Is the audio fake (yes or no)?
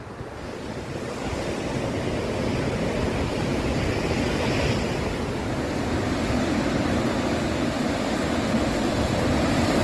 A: no